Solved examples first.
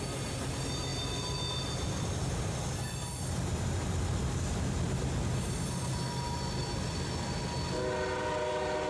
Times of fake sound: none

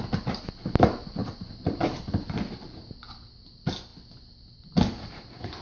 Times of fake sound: 1.2-3.3 (vocoder, BigVGAN v2)

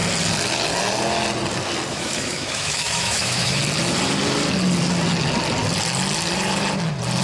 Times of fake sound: 1.9-3.6 (autoencoder, DAC-VAE)

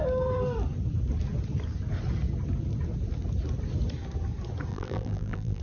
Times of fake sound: 4.7-5.6 (vocoder, BigVGAN v2)